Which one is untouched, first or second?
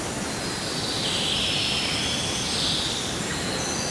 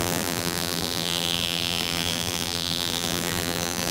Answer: first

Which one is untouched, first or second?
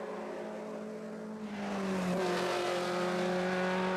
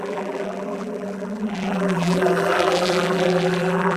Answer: first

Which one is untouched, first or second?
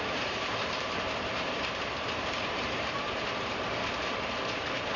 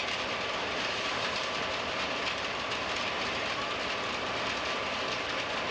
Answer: second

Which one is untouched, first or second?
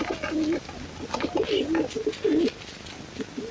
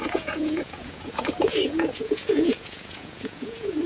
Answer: first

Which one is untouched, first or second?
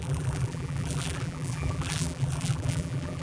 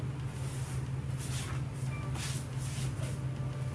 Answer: second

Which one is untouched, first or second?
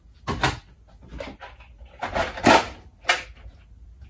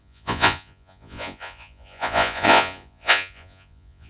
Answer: first